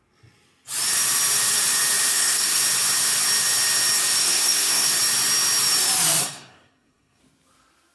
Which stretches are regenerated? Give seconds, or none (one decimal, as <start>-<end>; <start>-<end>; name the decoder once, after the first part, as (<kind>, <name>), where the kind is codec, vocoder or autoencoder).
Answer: 2.1-2.6 (codec, SNAC); 4.2-4.9; 6.2-7.2